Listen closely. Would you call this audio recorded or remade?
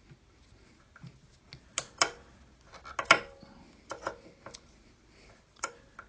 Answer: recorded